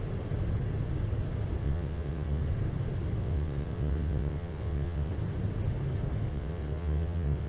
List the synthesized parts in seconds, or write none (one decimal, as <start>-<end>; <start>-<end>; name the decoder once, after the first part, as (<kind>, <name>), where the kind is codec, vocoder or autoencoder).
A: 1.6-2.4 (vocoder, WaveNeXt); 3.2-5.1; 6.3-7.5